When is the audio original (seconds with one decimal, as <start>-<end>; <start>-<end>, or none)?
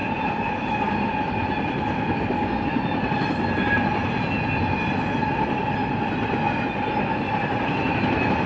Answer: 0.0-8.5